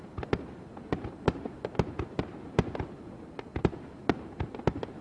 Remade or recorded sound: recorded